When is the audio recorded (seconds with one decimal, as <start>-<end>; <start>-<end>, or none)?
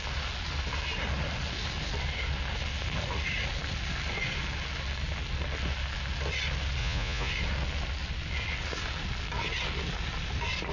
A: 0.0-6.8; 7.3-10.7